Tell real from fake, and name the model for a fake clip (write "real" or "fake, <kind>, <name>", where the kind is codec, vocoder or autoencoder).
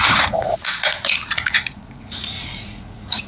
fake, vocoder, Vocos